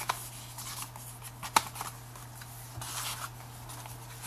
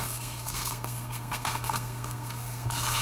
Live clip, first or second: first